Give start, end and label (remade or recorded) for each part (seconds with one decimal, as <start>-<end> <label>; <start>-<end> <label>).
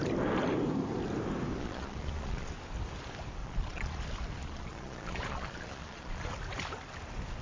0.0-1.6 recorded; 1.6-2.5 remade; 2.5-3.4 recorded; 3.4-4.0 remade; 4.0-4.4 recorded; 4.4-6.3 remade; 6.3-7.4 recorded